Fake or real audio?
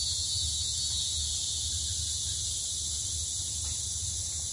real